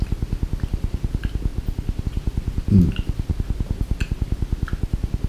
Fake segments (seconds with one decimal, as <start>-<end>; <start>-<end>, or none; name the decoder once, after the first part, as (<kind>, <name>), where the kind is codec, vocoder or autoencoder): none